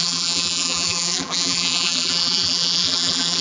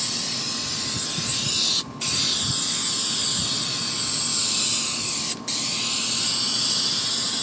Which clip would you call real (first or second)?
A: second